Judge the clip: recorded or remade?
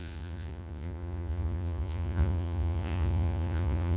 remade